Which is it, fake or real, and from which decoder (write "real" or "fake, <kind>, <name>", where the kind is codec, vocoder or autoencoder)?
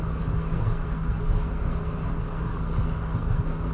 fake, codec, SNAC